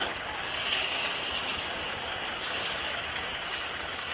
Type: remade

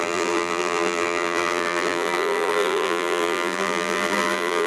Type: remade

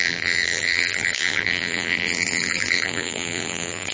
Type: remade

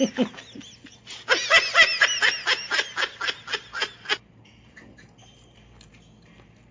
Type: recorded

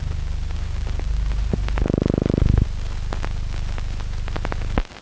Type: recorded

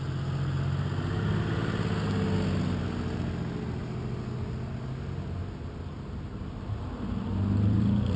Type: recorded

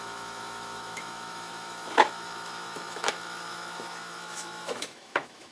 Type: remade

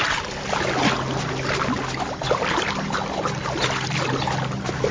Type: recorded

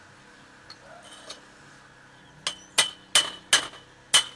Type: recorded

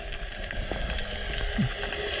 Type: recorded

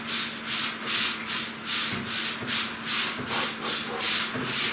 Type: recorded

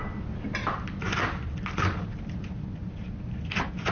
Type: recorded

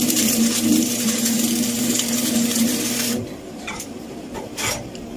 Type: remade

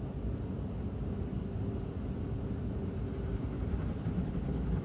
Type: recorded